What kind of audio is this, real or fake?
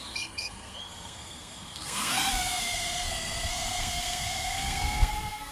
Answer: fake